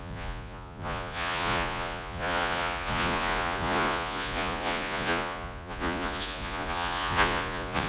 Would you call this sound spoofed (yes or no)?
yes